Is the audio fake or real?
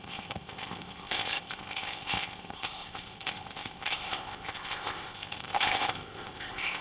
fake